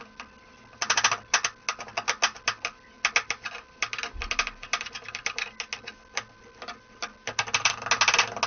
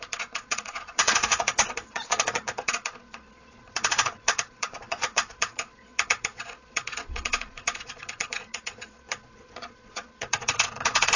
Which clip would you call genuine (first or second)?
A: first